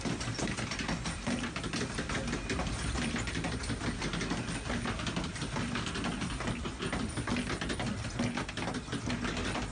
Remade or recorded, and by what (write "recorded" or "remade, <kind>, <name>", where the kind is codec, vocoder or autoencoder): recorded